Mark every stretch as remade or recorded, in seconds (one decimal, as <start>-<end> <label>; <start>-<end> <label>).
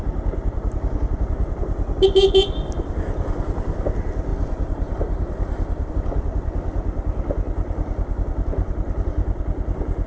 0.0-4.3 recorded; 4.3-5.9 remade; 5.9-10.1 recorded